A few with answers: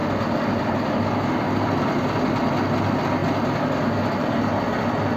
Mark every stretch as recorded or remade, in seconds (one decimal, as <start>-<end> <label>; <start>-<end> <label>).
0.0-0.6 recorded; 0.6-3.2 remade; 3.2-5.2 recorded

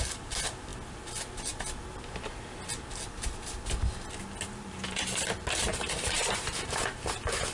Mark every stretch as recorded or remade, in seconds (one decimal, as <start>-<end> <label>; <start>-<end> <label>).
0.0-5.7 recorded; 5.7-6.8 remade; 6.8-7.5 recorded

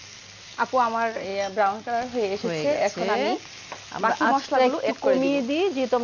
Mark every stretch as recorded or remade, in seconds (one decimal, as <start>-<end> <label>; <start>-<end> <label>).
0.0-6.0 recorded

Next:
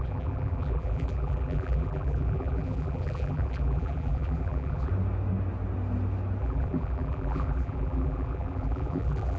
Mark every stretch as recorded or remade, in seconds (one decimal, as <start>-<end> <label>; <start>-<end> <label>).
0.0-4.9 remade; 4.9-6.4 recorded; 6.4-9.4 remade

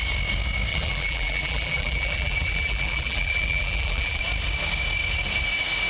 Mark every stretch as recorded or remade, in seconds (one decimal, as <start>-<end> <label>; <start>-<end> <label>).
0.0-0.7 recorded; 0.7-4.2 remade; 4.2-5.9 recorded